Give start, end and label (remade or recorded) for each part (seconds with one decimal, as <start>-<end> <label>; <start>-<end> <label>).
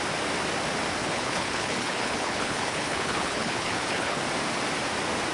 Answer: 0.0-1.0 recorded; 1.0-4.2 remade; 4.2-5.3 recorded